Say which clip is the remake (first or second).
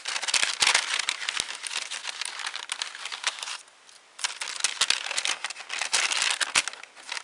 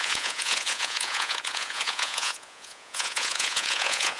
second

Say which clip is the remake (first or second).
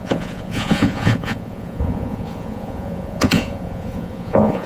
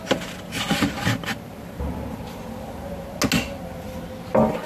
first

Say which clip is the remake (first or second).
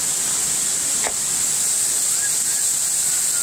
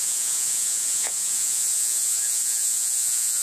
second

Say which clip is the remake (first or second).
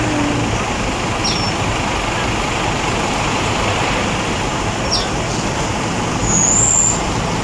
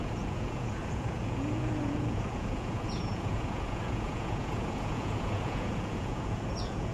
second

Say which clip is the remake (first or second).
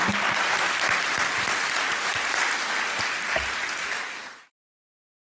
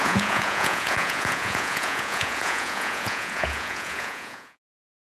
second